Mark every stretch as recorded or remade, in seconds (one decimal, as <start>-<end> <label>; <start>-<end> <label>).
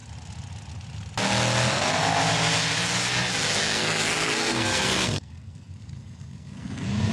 0.0-3.6 recorded; 3.6-7.1 remade